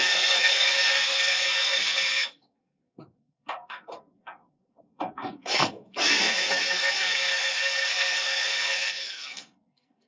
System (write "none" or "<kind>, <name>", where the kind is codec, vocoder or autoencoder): codec, SNAC